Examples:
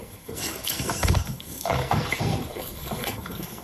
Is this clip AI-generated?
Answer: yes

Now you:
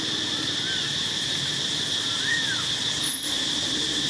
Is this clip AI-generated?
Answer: no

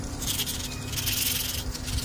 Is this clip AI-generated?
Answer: no